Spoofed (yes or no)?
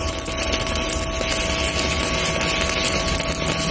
no